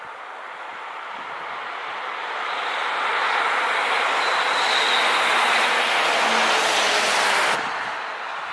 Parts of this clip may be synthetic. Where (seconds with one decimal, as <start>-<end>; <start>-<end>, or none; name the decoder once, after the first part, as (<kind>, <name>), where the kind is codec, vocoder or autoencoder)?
0.7-2.3 (vocoder, BigVGAN v2)